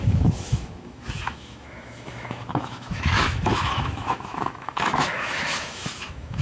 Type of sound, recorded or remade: remade